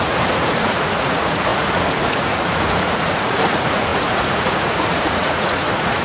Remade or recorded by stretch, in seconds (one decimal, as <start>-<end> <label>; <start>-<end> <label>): 0.0-6.0 remade